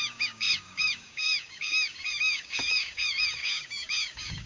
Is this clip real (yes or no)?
no